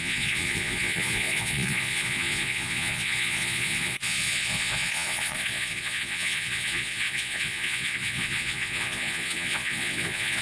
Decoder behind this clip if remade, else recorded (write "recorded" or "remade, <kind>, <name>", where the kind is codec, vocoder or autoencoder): remade, vocoder, Vocos